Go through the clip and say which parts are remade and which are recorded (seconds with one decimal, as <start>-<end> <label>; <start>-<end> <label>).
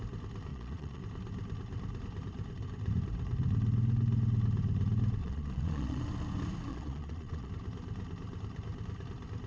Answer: 0.0-0.5 recorded; 0.5-1.0 remade; 1.0-5.2 recorded; 5.2-6.0 remade; 6.0-6.7 recorded; 6.7-7.5 remade; 7.5-9.5 recorded